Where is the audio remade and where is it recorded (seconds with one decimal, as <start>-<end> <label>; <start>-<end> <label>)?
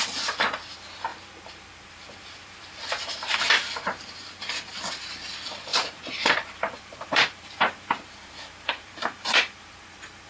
0.0-1.1 recorded; 1.1-4.9 remade; 4.9-5.7 recorded; 5.7-9.8 remade; 9.8-10.3 recorded